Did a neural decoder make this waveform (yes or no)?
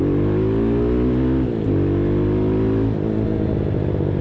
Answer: no